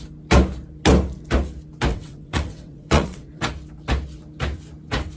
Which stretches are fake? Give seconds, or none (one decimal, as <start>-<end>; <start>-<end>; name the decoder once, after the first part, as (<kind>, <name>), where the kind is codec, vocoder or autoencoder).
1.9-3.5 (vocoder, WaveNeXt)